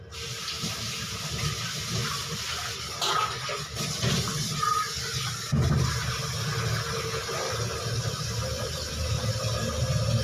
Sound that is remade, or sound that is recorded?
recorded